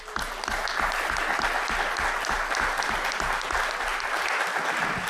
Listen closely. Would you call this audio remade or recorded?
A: recorded